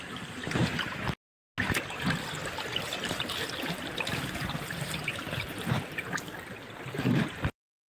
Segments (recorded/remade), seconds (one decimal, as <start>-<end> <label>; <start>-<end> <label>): 0.0-7.9 recorded